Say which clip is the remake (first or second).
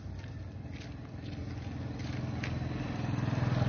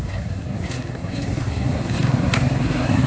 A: second